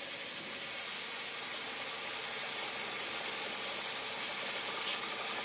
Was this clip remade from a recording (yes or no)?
no